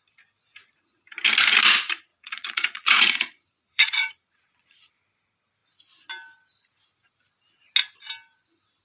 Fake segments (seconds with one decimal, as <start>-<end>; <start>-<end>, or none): 2.1-4.9